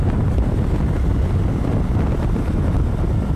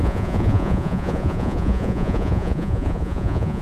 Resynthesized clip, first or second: second